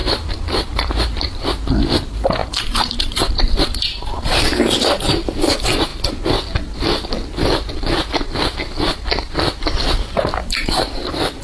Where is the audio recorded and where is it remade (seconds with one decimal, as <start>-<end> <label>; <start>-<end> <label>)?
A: 0.0-5.9 remade; 5.9-10.0 recorded; 10.0-11.4 remade